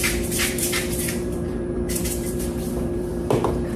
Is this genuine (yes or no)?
no